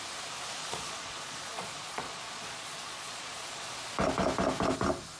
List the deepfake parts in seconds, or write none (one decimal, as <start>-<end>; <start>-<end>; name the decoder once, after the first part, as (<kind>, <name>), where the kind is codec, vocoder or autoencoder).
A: 0.6-3.7 (vocoder, Vocos)